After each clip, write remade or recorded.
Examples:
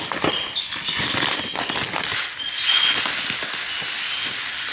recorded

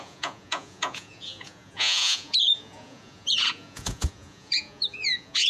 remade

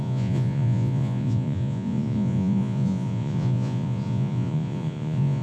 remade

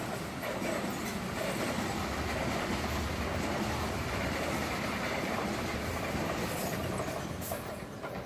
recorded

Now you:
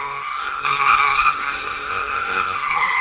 remade